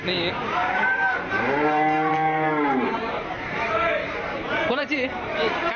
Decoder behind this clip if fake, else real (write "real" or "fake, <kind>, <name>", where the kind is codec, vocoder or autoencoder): fake, vocoder, BigVGAN v2